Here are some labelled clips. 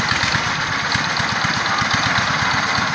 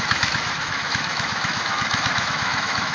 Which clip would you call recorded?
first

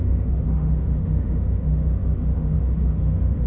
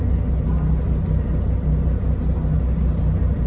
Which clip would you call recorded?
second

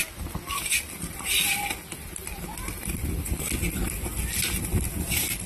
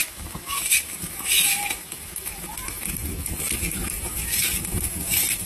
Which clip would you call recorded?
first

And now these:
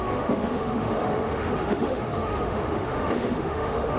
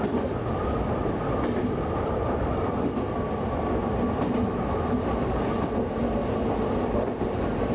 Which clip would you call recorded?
second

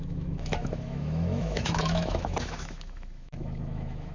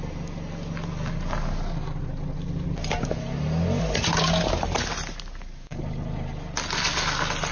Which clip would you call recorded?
second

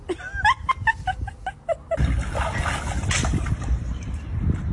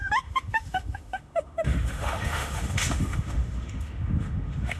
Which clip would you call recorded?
first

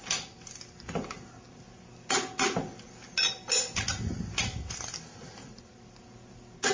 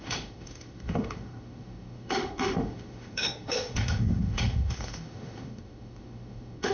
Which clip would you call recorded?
first